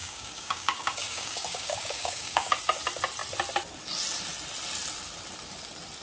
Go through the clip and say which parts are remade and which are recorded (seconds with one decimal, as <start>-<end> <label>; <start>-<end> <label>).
0.0-2.5 remade; 2.5-6.0 recorded